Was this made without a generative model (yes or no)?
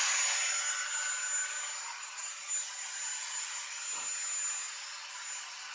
yes